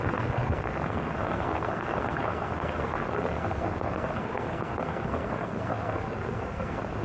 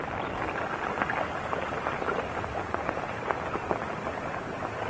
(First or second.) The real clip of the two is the second